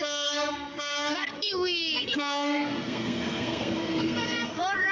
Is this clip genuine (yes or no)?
no